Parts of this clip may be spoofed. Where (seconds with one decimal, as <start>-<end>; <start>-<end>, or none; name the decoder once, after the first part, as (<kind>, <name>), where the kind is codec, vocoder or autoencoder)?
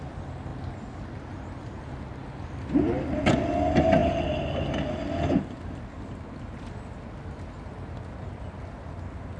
none